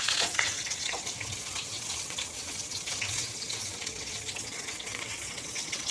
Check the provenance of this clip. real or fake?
fake